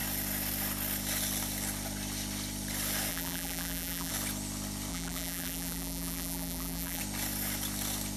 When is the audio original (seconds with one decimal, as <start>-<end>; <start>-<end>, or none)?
0.0-3.1; 4.1-4.9; 7.0-8.2